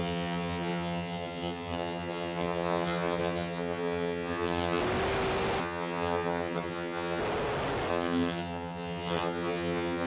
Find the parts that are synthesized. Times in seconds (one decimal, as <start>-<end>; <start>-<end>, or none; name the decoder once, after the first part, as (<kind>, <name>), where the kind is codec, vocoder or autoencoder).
0.0-4.8 (vocoder, HiFi-GAN); 5.6-7.2; 7.9-10.1